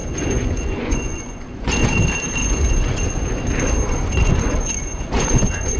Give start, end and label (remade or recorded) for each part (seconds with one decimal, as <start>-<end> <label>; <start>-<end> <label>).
0.0-2.0 remade; 2.0-2.4 recorded; 2.4-3.4 remade; 3.4-3.9 recorded; 3.9-5.8 remade